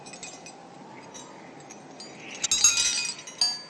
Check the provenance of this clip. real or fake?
real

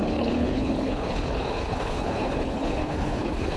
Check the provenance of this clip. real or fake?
fake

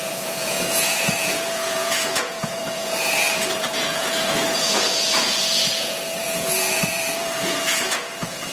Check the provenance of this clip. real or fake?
fake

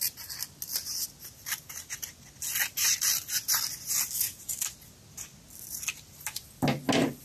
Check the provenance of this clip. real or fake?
real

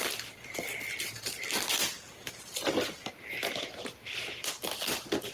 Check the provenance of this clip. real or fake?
real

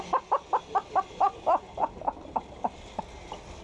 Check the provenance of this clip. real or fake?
real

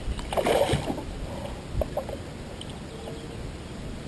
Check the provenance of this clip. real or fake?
real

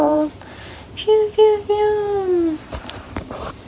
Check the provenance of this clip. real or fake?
fake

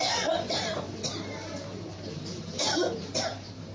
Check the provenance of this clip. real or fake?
fake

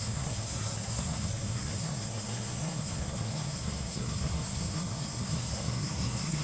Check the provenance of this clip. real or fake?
fake